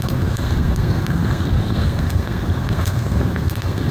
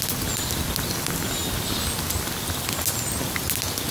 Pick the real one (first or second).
second